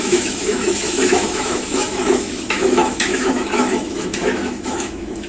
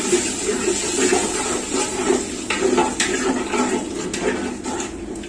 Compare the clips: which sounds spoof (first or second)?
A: first